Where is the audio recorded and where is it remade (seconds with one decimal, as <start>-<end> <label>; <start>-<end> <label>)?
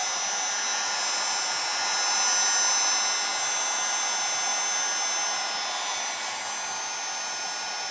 0.0-7.9 recorded